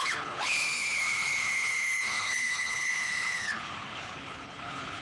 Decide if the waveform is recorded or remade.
remade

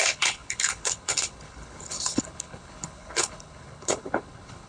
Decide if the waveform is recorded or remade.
remade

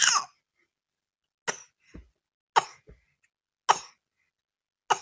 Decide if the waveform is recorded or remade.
recorded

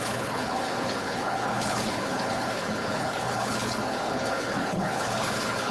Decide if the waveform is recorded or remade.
remade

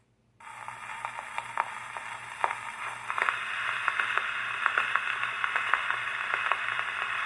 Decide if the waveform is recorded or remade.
recorded